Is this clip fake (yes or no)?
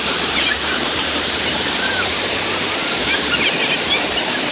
yes